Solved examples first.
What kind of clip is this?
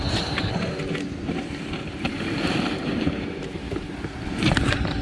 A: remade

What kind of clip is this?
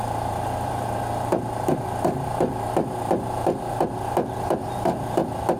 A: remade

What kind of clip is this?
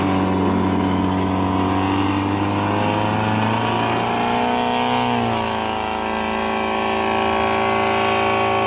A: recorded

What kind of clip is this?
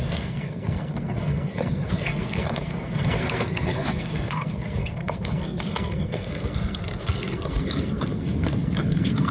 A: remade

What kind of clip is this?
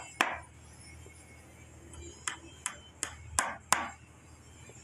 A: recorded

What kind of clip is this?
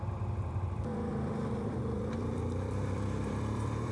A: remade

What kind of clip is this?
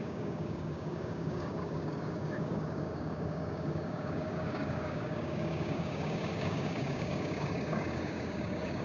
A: remade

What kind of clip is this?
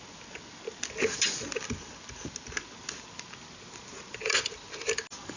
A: recorded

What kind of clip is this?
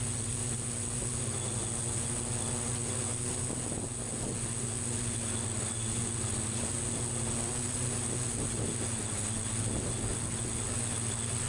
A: recorded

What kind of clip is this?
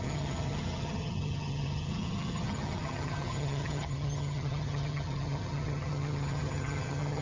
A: remade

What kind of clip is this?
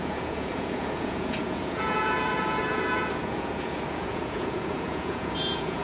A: remade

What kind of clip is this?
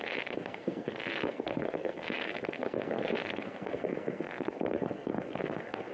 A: remade